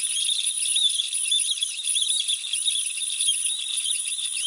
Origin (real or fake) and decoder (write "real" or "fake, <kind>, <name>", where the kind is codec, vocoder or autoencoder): fake, vocoder, BigVGAN v2